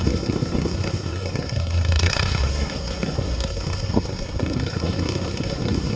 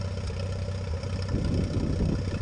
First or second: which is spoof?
first